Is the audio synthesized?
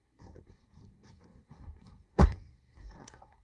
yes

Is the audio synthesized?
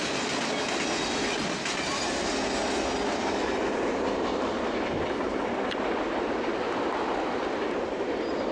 no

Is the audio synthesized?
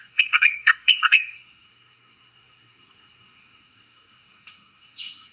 yes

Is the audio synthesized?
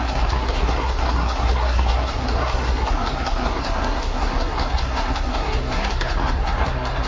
yes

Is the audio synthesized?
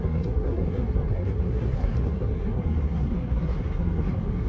yes